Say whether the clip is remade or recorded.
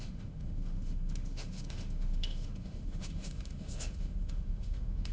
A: remade